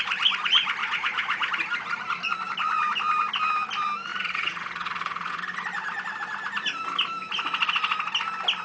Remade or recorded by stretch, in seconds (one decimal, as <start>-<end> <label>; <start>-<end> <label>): 0.0-0.8 recorded; 0.8-1.5 remade; 1.5-4.1 recorded; 4.1-5.4 remade; 5.4-8.6 recorded